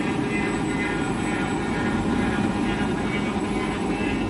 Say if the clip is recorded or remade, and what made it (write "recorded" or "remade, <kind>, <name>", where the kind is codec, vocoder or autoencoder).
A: recorded